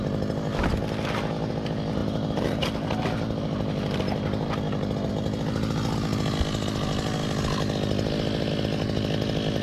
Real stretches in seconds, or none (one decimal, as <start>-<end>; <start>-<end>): 0.0-9.6